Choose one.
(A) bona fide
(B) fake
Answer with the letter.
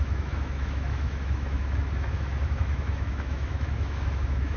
B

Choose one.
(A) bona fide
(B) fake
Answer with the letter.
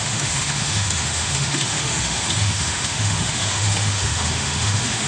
B